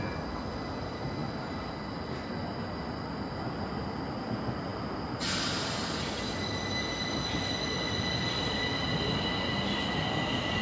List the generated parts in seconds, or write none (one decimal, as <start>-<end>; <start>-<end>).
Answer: none